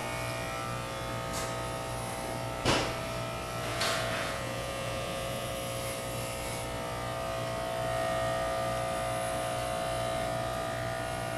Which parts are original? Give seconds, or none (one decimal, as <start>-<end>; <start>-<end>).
0.0-3.7; 5.5-11.4